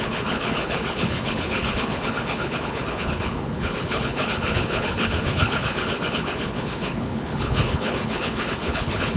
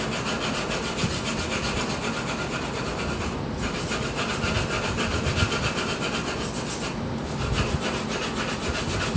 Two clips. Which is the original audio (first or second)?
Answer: second